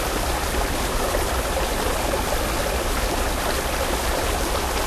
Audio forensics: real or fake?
real